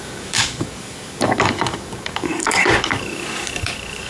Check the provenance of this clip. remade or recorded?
remade